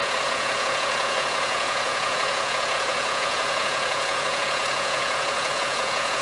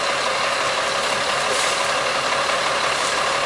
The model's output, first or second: first